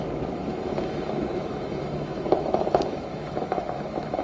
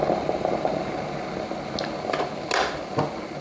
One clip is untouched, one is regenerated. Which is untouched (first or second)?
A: second